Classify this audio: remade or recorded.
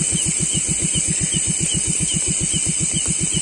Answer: recorded